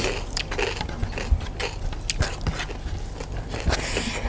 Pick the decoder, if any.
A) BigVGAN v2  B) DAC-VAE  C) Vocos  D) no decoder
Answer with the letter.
D